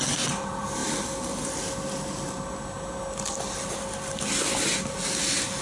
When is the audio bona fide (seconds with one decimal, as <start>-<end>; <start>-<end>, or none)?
0.0-5.6